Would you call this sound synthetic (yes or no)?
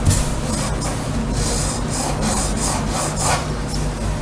no